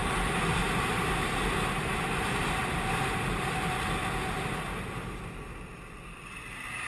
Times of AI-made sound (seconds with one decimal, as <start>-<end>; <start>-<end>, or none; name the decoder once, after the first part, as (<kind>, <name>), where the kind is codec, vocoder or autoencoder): 1.9-2.9 (vocoder, BigVGAN v2)